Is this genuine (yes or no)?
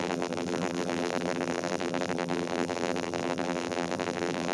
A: no